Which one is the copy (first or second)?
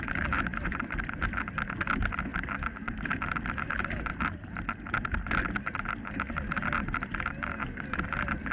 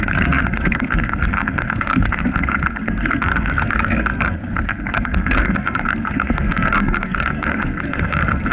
second